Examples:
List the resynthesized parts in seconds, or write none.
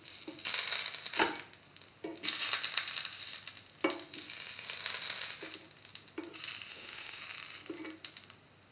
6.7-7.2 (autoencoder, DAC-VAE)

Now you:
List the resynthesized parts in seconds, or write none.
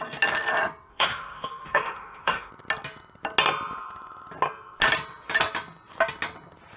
0.9-2.5 (autoencoder, DAC-VAE)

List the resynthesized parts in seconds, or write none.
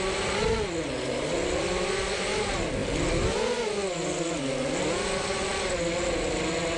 none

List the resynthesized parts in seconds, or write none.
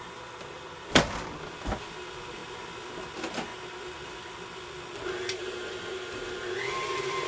none